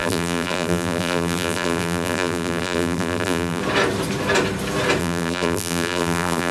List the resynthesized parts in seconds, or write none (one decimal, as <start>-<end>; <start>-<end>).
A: 0.0-3.6; 5.0-6.5